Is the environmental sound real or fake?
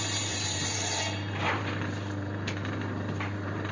fake